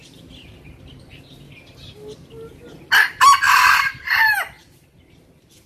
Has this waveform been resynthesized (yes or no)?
no